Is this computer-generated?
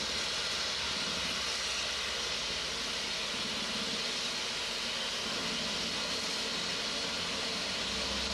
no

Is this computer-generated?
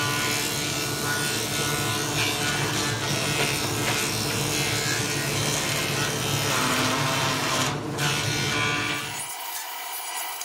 no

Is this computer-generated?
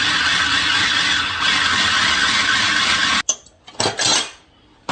no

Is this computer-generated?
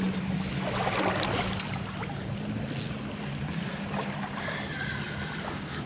no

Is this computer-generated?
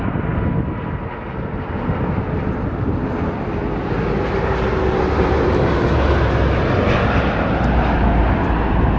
no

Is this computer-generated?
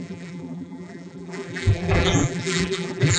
yes